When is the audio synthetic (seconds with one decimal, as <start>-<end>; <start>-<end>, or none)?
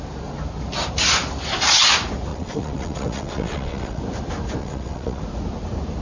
2.3-4.0; 4.6-5.2